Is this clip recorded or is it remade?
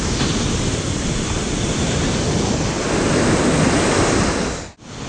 recorded